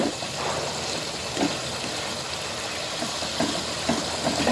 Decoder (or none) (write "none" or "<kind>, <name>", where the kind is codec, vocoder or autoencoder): none